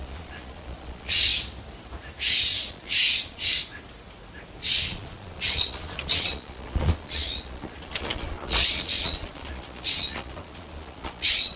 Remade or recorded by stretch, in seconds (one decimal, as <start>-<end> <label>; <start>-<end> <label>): 0.0-1.3 remade; 1.3-2.4 recorded; 2.4-3.6 remade; 3.6-4.6 recorded; 4.6-11.6 remade